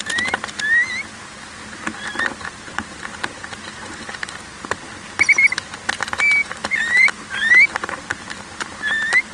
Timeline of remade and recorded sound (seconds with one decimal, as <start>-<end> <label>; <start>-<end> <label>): 0.0-6.4 recorded; 6.4-7.5 remade; 7.5-9.3 recorded